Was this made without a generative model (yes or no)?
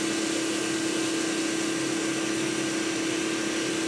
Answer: yes